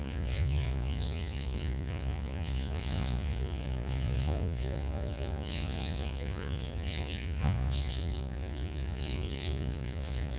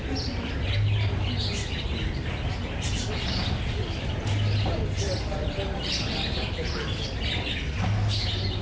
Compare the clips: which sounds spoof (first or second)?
first